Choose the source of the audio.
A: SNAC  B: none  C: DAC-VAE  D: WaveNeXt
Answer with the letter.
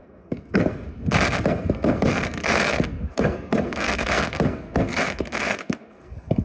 A